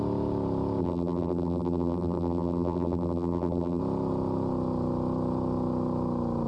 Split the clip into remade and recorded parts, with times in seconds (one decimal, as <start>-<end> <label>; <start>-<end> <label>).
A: 0.0-0.8 recorded; 0.8-3.8 remade; 3.8-6.5 recorded